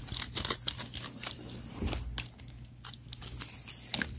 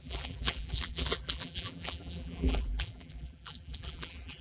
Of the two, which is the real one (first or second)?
first